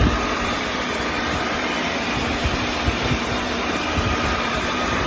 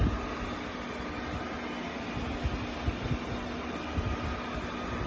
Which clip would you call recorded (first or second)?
second